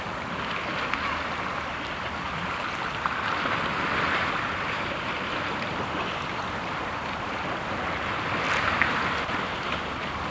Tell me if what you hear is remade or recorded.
recorded